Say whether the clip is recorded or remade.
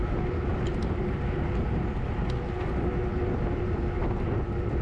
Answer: recorded